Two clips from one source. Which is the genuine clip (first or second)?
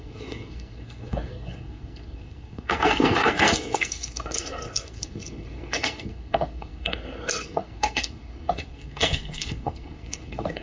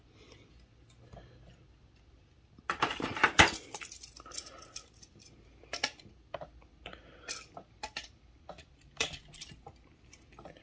second